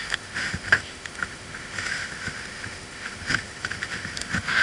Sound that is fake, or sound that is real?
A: fake